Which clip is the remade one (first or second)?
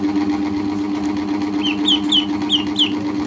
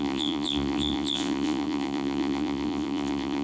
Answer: second